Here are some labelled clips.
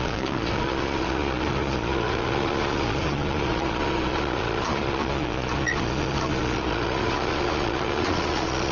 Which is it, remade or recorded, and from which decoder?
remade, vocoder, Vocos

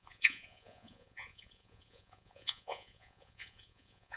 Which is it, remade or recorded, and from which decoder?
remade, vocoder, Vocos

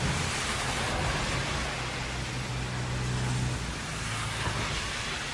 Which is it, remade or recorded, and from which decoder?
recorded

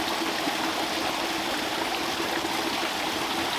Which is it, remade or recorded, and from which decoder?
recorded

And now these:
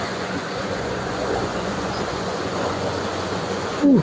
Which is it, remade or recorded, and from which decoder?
remade, vocoder, Vocos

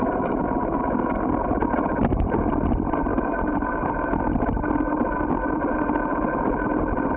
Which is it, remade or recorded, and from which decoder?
recorded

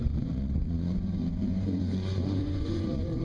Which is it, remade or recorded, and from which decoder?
remade, vocoder, Vocos